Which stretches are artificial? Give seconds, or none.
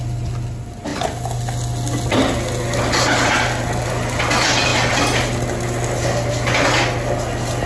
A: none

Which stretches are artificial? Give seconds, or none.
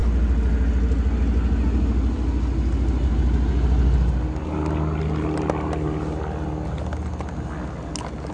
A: none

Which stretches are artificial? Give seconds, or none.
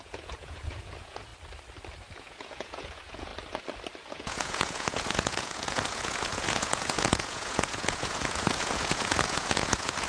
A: 0.0-1.3 (vocoder, Vocos); 2.2-3.3; 4.1-10.1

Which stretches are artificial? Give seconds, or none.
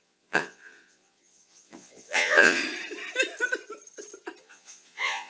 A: 0.0-2.6 (vocoder, Vocos); 4.4-5.3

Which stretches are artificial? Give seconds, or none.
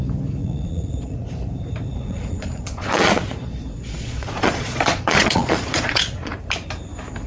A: 0.4-1.3 (vocoder, Vocos); 1.9-6.3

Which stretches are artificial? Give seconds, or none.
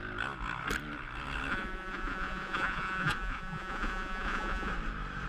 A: 1.5-4.7 (vocoder, Vocos)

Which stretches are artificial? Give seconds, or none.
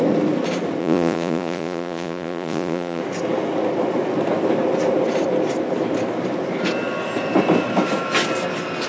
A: 0.8-3.0 (vocoder, Vocos)